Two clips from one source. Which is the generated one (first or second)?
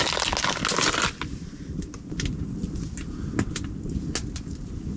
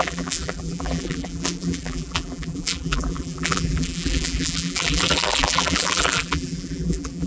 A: second